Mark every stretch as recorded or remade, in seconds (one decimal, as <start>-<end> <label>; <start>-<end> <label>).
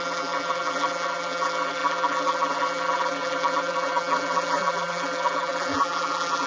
0.0-6.5 remade